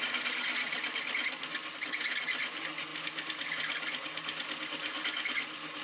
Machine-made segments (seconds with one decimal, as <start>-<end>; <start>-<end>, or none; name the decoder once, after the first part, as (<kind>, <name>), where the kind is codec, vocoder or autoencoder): none